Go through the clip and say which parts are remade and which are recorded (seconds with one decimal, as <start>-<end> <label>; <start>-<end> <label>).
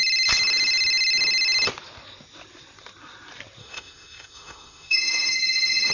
0.0-3.6 recorded; 3.6-5.9 remade